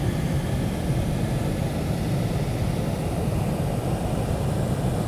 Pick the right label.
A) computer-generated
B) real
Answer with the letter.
B